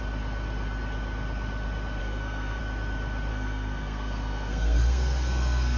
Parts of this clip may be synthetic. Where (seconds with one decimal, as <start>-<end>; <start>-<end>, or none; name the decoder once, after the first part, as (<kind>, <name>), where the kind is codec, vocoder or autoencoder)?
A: 2.0-2.6 (codec, SNAC); 3.3-5.8